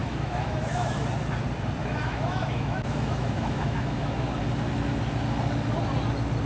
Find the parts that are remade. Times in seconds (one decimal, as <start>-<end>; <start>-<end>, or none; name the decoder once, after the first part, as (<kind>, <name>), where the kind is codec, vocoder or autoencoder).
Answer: 0.0-1.0 (autoencoder, DAC-VAE); 1.8-4.4